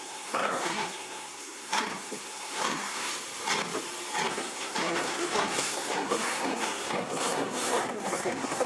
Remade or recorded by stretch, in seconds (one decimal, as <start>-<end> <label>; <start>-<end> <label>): 0.0-3.1 remade; 3.1-4.3 recorded; 4.3-8.7 remade